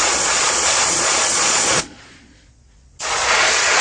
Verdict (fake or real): fake